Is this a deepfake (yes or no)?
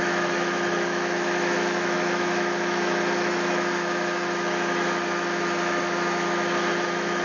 yes